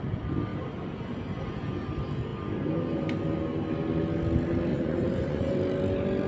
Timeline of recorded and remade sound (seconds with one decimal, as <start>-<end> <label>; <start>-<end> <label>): 0.0-4.7 recorded; 4.7-5.5 remade; 5.5-6.3 recorded